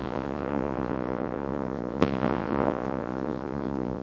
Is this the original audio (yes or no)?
no